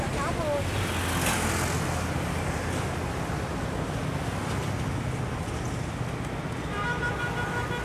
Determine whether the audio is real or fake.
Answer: real